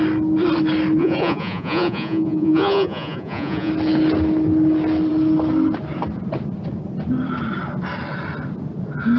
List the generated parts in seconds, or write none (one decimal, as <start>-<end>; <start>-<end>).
1.0-3.7